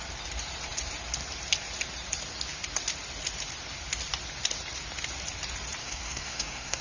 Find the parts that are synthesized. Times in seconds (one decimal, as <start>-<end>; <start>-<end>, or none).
5.8-6.8